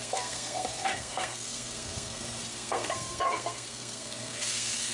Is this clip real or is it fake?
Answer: fake